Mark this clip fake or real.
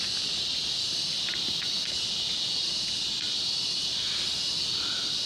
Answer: real